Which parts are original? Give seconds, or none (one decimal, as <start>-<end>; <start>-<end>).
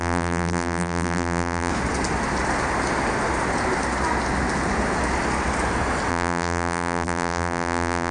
1.7-6.1